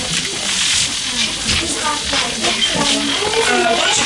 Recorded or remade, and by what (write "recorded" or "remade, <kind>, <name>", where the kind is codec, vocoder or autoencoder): recorded